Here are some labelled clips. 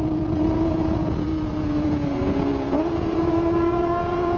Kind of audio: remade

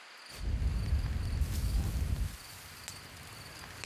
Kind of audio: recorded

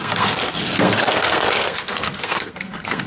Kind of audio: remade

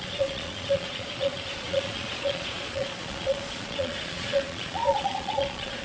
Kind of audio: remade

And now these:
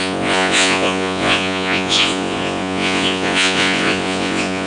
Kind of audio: remade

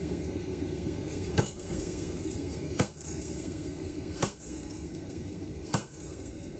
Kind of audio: remade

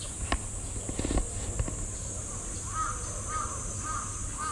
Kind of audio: recorded